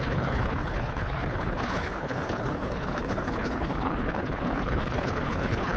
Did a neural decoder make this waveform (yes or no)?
yes